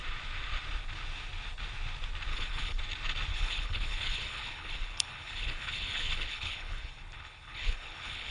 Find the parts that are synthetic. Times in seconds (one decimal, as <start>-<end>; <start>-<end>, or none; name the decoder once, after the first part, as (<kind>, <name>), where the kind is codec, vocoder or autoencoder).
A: 2.3-2.8 (codec, HILCodec); 3.3-8.3